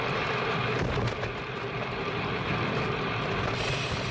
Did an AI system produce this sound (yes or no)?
no